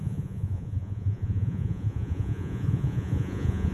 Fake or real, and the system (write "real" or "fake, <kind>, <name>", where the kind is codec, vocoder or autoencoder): fake, vocoder, Vocos